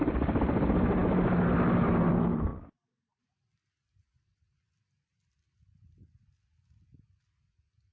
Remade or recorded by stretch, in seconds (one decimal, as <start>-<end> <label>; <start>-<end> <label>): 0.0-7.9 recorded